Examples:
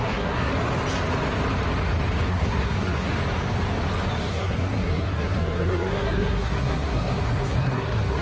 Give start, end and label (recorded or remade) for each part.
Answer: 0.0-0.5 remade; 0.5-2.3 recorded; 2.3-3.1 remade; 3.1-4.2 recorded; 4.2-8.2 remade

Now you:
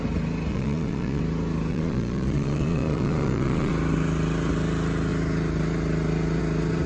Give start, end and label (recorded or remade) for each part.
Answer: 0.0-0.5 recorded; 0.5-1.2 remade; 1.2-1.7 recorded; 1.7-3.7 remade; 3.7-6.9 recorded

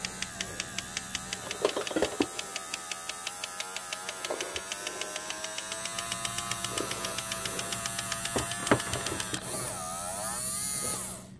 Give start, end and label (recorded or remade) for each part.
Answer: 0.0-11.4 recorded